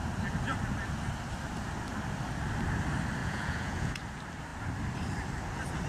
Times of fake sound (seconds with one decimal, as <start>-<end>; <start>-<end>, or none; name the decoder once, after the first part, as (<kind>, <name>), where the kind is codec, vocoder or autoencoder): 3.2-4.0 (vocoder, Vocos)